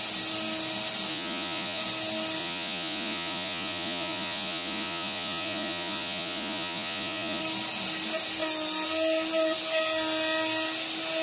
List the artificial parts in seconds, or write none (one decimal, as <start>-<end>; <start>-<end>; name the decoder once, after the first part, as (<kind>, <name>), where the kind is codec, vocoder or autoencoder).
1.1-1.8 (vocoder, Vocos); 2.4-7.4

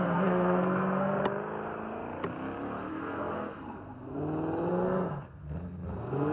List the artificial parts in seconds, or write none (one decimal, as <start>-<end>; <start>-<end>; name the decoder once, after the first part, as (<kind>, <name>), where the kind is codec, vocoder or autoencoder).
0.0-1.2 (codec, SNAC); 2.9-4.1; 4.7-6.3